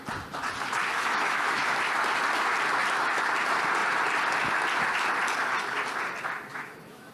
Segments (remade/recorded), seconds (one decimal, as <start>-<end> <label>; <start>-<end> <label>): 0.0-0.9 recorded; 0.9-1.7 remade; 1.7-6.5 recorded; 6.5-7.1 remade

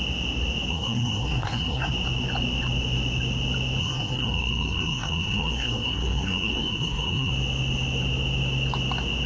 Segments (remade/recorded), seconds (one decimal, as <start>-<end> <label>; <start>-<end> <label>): 0.0-0.7 recorded; 0.7-1.9 remade; 1.9-3.8 recorded; 3.8-7.3 remade; 7.3-9.3 recorded

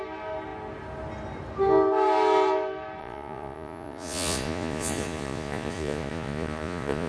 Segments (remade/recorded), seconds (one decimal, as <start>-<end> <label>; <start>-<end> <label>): 0.0-3.0 recorded; 3.0-7.1 remade

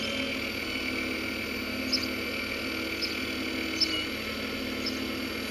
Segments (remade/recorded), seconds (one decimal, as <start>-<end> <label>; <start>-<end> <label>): 0.0-5.5 recorded